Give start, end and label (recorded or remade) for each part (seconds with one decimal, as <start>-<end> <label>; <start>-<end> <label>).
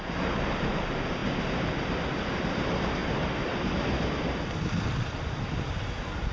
0.0-6.3 recorded